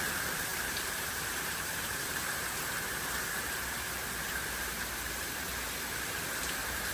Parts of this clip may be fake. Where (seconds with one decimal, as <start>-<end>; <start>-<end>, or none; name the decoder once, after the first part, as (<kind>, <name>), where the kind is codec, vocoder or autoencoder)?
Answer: 0.0-5.5 (vocoder, BigVGAN v2); 6.4-6.9